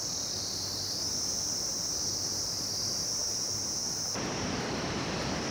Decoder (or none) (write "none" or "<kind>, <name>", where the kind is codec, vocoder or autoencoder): none